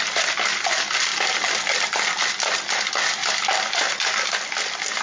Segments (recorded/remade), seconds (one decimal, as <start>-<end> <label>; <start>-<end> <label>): 0.0-5.0 recorded